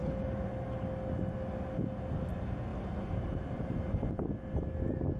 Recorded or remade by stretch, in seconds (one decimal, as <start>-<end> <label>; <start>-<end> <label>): 0.0-0.5 remade; 0.5-2.7 recorded; 2.7-4.1 remade; 4.1-5.2 recorded